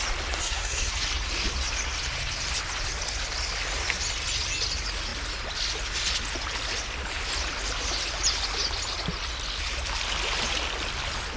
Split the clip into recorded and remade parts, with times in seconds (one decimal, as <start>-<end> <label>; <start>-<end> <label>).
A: 0.0-0.4 recorded; 0.4-0.9 remade; 0.9-11.4 recorded